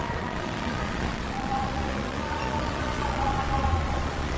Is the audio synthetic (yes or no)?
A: yes